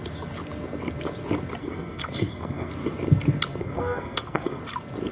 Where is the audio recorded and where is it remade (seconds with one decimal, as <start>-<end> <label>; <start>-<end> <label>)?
0.0-1.6 recorded; 1.6-2.7 remade; 2.7-3.6 recorded; 3.6-4.6 remade; 4.6-5.1 recorded